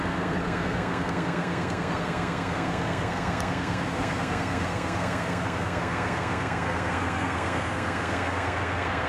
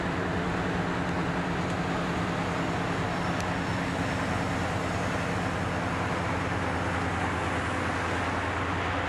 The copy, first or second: first